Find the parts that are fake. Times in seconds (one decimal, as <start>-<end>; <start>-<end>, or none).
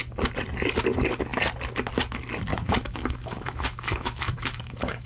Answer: 2.5-5.1